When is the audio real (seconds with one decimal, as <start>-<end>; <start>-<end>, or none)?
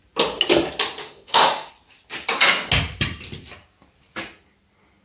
0.0-1.0; 1.7-5.0